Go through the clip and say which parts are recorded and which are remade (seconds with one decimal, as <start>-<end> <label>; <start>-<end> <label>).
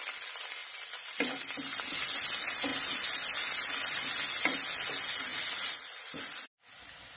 0.0-5.3 recorded; 5.3-6.2 remade; 6.2-7.2 recorded